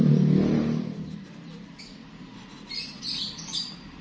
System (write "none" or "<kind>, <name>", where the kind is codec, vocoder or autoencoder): vocoder, BigVGAN v2